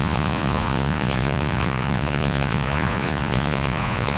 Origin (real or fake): fake